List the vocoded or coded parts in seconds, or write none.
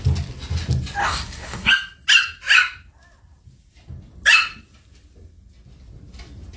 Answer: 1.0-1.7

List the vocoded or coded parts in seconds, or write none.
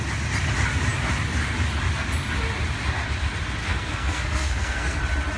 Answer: 3.6-5.0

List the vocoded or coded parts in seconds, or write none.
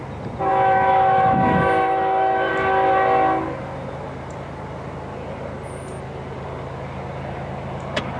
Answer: 0.5-2.5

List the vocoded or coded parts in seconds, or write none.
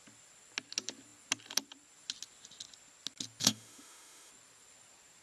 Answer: 3.4-4.3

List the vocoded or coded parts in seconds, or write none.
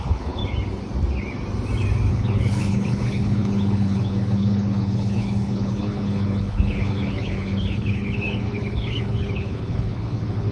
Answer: 0.0-0.4; 2.1-10.5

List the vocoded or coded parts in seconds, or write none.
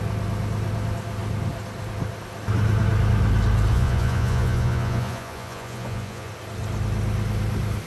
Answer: 3.7-6.3